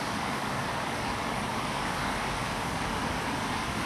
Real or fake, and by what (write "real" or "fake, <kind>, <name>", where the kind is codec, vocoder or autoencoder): fake, codec, DAC